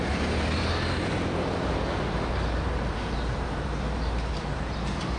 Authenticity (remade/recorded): remade